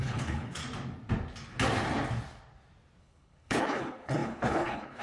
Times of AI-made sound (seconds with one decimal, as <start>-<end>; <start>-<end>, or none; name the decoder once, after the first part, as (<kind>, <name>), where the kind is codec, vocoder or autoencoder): 0.0-0.6 (codec, HILCodec); 3.0-5.0